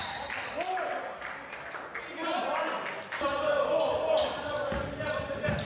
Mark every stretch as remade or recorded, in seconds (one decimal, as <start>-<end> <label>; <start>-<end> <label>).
0.0-5.6 recorded

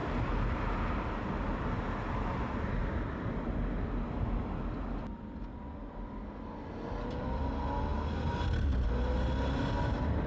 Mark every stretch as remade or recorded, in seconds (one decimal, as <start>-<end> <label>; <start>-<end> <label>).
0.0-10.3 recorded

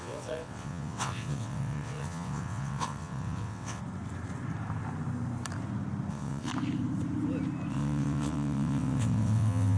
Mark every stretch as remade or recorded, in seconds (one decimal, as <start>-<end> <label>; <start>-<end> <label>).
0.0-3.8 remade; 3.8-6.1 recorded; 6.1-6.5 remade; 6.5-7.7 recorded; 7.7-9.8 remade

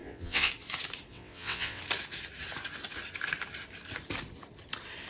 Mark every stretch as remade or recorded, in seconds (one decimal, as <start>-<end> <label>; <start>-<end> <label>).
0.0-0.5 remade; 0.5-1.1 recorded; 1.1-1.8 remade; 1.8-5.1 recorded

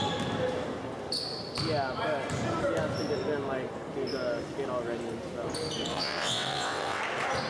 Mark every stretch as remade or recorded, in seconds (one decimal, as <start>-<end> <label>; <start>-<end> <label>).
0.0-5.9 recorded; 5.9-7.0 remade; 7.0-7.5 recorded

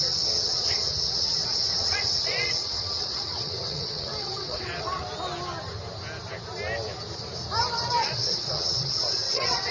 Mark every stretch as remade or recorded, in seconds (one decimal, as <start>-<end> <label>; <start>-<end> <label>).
0.0-5.0 remade; 5.0-8.0 recorded; 8.0-9.7 remade